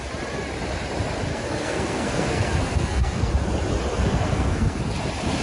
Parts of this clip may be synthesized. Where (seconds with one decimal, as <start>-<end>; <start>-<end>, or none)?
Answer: 1.3-3.3; 3.9-4.8